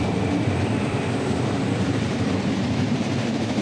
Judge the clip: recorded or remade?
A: remade